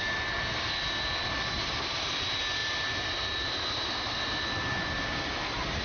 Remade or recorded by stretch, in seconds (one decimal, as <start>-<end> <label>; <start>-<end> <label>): 0.0-5.8 recorded